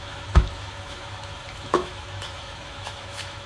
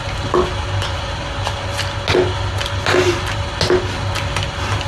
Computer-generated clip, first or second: first